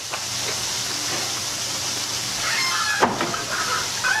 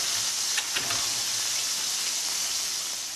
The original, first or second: second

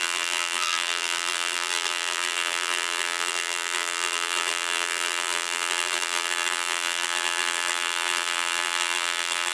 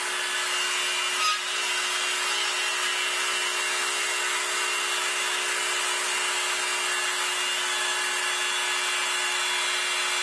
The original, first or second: second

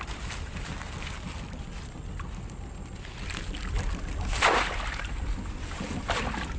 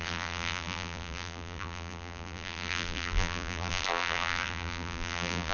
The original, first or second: first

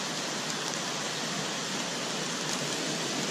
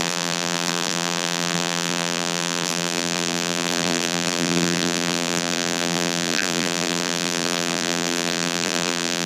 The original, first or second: first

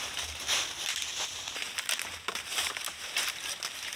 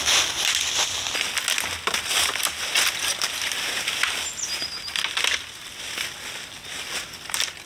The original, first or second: second